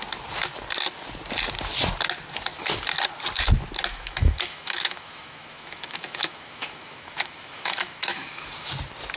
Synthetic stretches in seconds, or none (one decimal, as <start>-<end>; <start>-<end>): 3.9-8.7

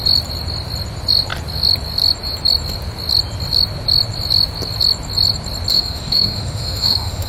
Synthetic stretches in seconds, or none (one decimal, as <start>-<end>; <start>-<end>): 5.7-7.3